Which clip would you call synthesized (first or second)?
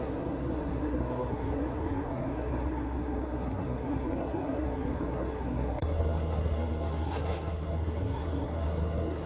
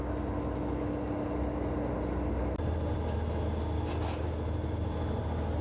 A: first